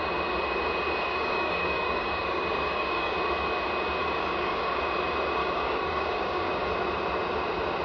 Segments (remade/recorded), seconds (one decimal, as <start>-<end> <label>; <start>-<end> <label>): 0.0-1.1 recorded; 1.1-3.1 remade; 3.1-4.0 recorded; 4.0-4.8 remade; 4.8-5.4 recorded; 5.4-6.7 remade; 6.7-7.8 recorded